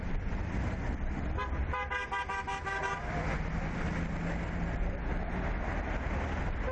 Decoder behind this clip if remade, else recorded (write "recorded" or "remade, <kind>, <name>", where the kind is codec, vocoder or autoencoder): recorded